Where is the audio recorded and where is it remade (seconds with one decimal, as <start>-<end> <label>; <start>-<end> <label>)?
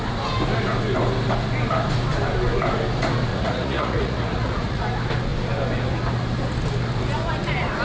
0.0-3.3 recorded; 3.3-4.8 remade; 4.8-7.8 recorded